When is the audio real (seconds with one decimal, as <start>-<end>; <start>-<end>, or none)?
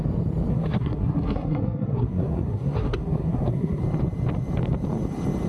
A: 0.0-0.5; 3.8-5.5